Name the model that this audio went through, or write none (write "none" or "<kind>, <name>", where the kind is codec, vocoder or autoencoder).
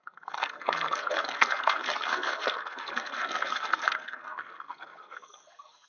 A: codec, SNAC